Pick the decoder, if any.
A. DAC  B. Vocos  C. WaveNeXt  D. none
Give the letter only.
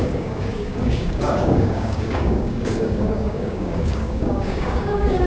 A